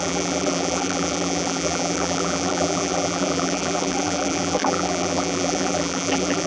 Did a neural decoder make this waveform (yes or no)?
yes